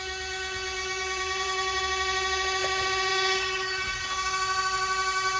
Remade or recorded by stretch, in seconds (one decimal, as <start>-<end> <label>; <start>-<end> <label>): 0.0-0.8 recorded; 0.8-1.8 remade; 1.8-5.4 recorded